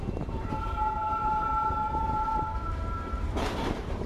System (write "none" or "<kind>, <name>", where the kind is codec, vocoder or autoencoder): vocoder, BigVGAN v2